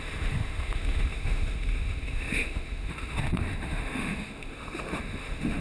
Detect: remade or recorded remade